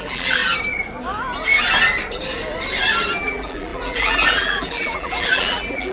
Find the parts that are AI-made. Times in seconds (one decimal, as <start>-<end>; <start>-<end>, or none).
0.0-0.4; 3.2-5.9